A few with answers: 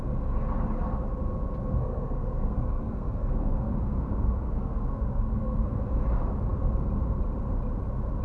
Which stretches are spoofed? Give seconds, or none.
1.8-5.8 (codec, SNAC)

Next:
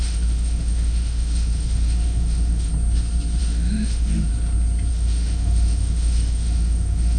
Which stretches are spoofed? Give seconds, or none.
0.0-2.7 (autoencoder, DAC-VAE); 3.4-4.3; 4.9-7.2